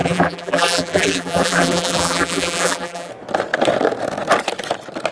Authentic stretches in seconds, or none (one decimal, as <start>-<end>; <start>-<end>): 3.1-5.1